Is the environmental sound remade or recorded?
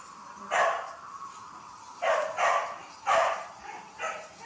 recorded